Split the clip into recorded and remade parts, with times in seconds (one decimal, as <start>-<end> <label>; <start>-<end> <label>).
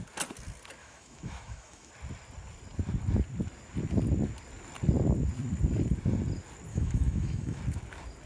0.0-0.8 recorded; 0.8-1.9 remade; 1.9-6.7 recorded; 6.7-7.6 remade; 7.6-8.3 recorded